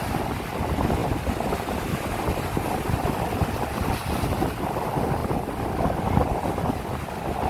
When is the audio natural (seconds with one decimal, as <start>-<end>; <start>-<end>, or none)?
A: 0.0-7.5

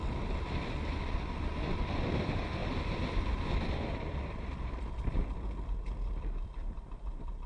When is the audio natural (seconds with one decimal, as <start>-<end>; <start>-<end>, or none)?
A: none